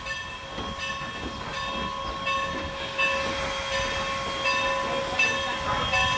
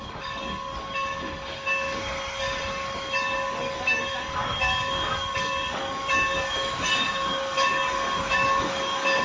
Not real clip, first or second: second